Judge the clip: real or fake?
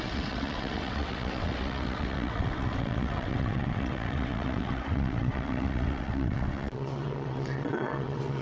fake